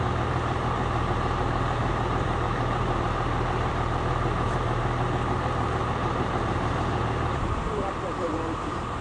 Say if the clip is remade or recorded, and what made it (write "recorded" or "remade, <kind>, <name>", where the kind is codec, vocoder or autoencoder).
remade, vocoder, BigVGAN v2